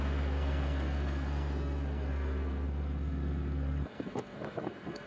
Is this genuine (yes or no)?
no